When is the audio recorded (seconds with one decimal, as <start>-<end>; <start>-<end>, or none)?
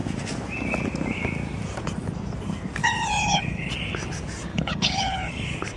0.0-2.8; 3.7-4.5; 5.3-5.8